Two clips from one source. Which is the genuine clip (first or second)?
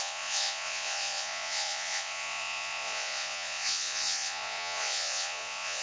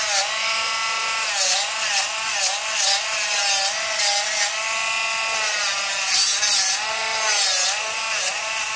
second